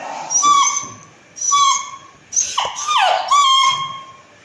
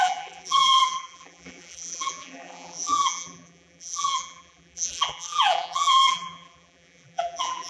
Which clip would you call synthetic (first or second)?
second